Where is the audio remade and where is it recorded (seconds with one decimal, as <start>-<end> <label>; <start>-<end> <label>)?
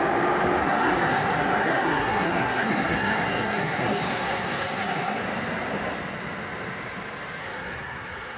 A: 0.0-0.6 recorded; 0.6-5.2 remade; 5.2-7.4 recorded; 7.4-8.4 remade